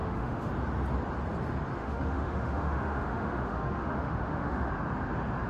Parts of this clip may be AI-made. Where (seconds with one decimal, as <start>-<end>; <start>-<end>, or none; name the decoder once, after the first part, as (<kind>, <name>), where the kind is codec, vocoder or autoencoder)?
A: 0.0-0.5 (autoencoder, DAC-VAE); 1.8-4.7